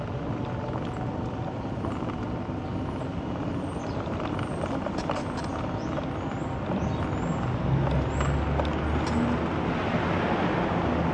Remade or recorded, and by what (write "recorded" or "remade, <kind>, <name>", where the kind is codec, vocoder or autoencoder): recorded